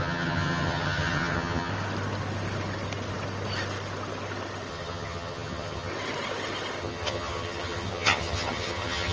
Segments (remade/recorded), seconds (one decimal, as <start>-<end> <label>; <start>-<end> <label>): 0.0-1.7 remade; 1.7-4.7 recorded; 4.7-5.9 remade; 5.9-6.8 recorded; 6.8-9.1 remade